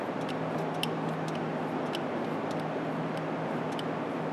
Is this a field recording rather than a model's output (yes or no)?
yes